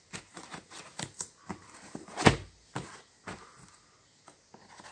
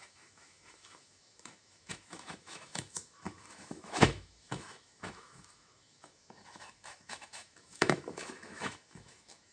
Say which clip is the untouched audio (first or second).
first